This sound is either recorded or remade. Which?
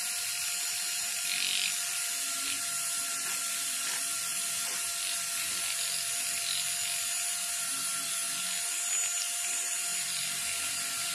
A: recorded